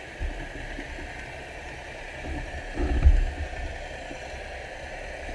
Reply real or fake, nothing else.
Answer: real